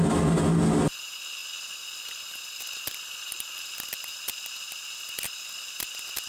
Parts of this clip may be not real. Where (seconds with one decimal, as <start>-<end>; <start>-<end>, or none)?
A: none